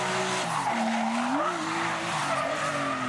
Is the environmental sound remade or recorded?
recorded